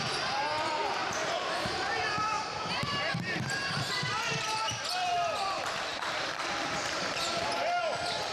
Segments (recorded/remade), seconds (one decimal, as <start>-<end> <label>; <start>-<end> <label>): 0.0-1.0 recorded; 1.0-4.8 remade; 4.8-5.9 recorded; 5.9-7.8 remade; 7.8-8.3 recorded